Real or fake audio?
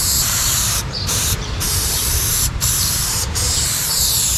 fake